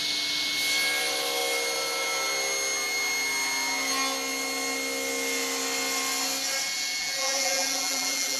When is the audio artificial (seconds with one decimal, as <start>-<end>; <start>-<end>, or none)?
7.0-8.4